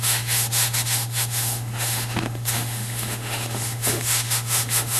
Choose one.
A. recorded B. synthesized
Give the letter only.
B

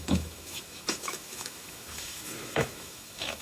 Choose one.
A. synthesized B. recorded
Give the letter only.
A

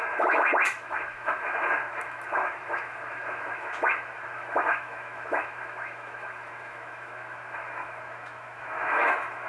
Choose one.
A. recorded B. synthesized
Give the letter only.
B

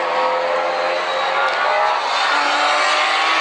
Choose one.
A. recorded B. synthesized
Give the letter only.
A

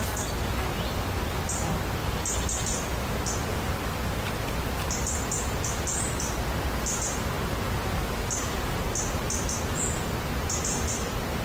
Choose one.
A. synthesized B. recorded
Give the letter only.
B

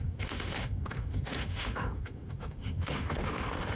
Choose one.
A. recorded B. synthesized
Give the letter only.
B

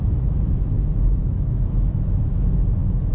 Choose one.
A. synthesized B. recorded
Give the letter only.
A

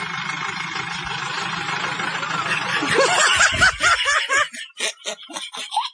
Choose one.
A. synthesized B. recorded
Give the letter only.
B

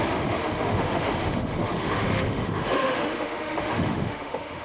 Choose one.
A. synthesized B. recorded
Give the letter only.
A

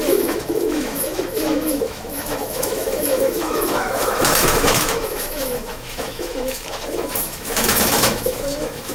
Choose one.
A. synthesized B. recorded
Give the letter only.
A